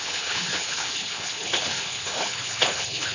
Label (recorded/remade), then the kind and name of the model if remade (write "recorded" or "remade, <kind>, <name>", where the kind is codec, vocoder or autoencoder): remade, codec, HILCodec